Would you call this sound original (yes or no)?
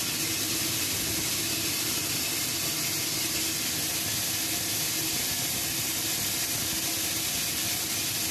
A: yes